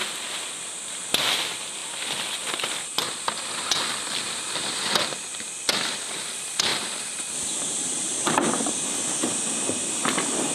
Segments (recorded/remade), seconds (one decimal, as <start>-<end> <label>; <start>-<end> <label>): 0.0-6.7 recorded; 6.7-8.8 remade; 8.8-10.5 recorded